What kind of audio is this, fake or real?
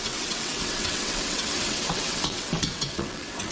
fake